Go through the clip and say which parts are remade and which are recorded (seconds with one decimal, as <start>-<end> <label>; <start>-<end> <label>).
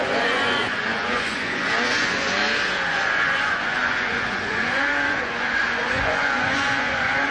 0.0-2.4 remade; 2.4-2.9 recorded; 2.9-7.3 remade